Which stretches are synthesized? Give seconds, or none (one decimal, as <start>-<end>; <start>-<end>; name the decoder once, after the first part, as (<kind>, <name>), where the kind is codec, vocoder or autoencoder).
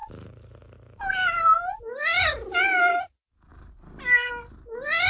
none